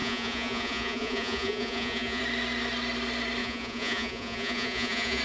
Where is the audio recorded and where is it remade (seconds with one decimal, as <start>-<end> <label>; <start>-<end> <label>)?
0.0-2.2 remade; 2.2-3.4 recorded; 3.4-5.2 remade